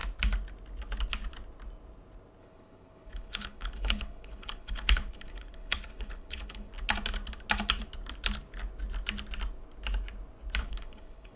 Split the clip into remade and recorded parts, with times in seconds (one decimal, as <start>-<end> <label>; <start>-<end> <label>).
0.0-2.4 recorded; 2.4-6.7 remade; 6.7-10.6 recorded; 10.6-11.4 remade